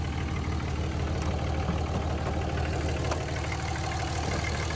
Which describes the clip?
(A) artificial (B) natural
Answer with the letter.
B